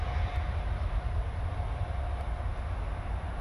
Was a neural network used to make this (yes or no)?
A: no